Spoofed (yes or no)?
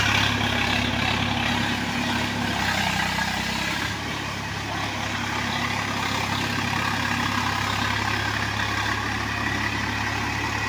no